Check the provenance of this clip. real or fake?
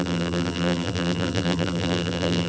fake